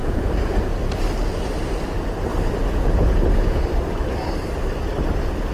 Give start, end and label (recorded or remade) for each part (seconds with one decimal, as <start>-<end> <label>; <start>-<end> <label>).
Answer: 0.0-0.8 remade; 0.8-2.3 recorded; 2.3-3.6 remade; 3.6-5.5 recorded